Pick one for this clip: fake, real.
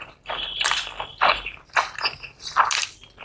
real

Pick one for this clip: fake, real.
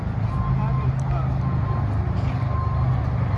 real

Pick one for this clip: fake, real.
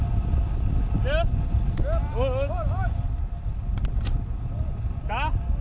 real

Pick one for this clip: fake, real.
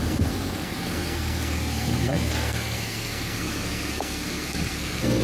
fake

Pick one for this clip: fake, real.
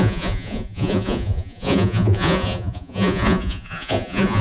fake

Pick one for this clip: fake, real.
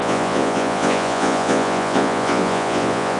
fake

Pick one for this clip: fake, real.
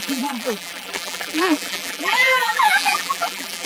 fake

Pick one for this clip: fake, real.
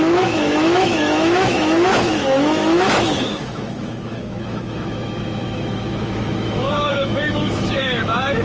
fake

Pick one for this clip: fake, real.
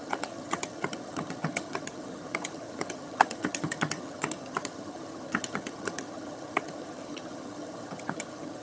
fake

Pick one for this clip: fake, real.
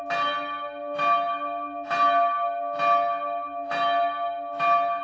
real